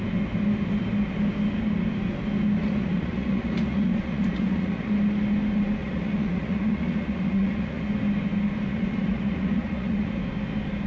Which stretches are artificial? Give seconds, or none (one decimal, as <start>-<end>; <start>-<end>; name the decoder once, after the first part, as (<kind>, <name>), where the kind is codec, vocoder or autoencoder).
2.6-4.9 (vocoder, Vocos); 5.8-7.8; 8.7-10.2